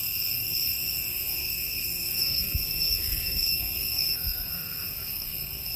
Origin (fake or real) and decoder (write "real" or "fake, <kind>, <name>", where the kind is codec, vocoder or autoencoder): fake, codec, SNAC